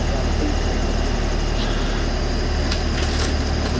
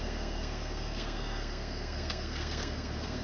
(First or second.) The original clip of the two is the first